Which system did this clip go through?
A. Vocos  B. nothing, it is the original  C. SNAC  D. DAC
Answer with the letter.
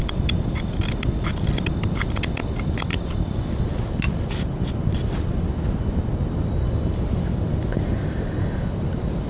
B